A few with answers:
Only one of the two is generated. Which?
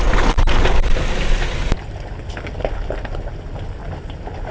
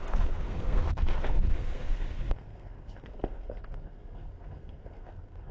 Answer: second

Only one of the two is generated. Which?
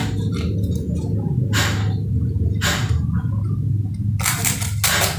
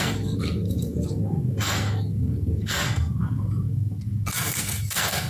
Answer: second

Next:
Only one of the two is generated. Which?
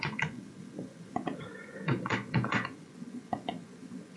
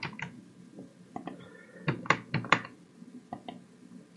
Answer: first